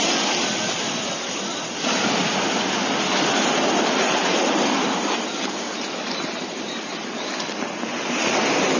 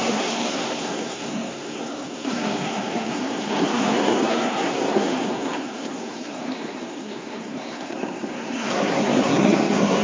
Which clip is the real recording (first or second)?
first